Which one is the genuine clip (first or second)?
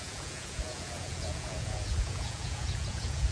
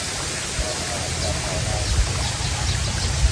second